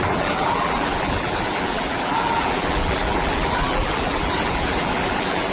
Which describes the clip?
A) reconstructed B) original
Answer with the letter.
A